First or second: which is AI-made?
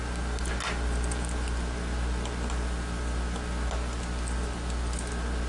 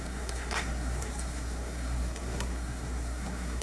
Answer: second